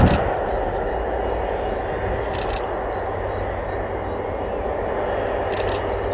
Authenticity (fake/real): real